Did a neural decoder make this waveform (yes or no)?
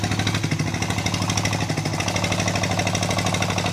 no